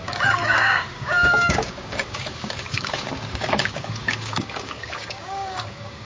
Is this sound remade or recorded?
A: remade